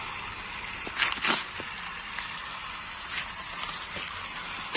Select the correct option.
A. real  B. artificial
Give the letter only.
A